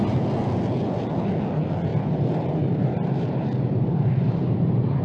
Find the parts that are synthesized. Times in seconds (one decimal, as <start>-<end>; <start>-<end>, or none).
1.9-5.0